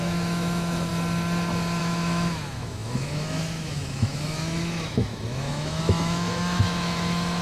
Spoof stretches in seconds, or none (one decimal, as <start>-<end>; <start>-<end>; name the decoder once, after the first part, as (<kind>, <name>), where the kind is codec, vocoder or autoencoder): 0.0-0.9 (autoencoder, DAC-VAE); 1.8-7.4